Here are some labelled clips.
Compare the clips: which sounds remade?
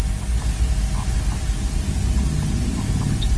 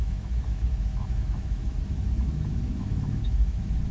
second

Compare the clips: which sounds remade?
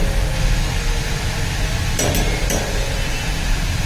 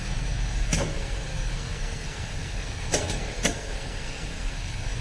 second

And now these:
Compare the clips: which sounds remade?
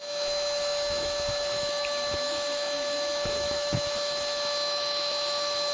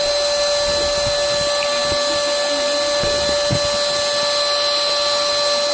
first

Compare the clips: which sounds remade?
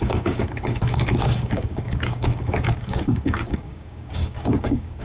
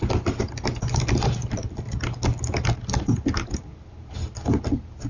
first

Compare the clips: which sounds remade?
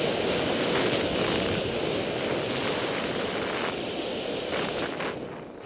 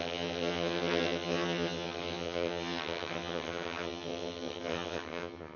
second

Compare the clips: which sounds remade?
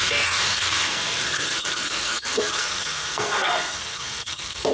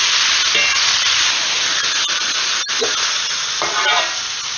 first